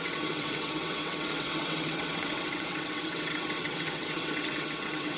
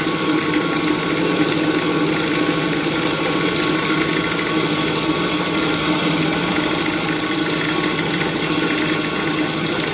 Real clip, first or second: second